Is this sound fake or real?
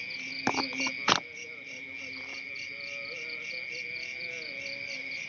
real